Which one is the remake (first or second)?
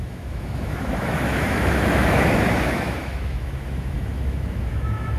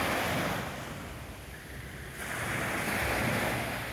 first